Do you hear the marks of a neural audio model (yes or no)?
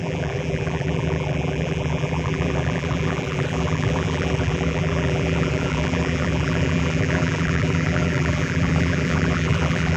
yes